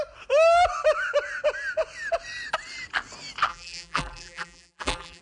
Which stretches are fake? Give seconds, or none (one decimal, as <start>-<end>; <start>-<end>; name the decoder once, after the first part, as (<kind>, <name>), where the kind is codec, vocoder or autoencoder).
3.5-5.2 (vocoder, BigVGAN v2)